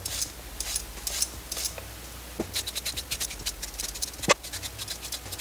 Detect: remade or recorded recorded